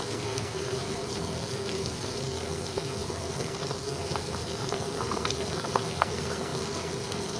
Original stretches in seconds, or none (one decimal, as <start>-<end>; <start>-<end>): none